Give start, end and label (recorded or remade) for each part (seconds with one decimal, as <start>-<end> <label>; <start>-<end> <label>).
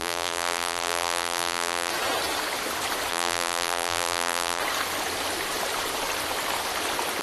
0.0-1.9 remade; 1.9-3.1 recorded; 3.1-4.6 remade; 4.6-7.2 recorded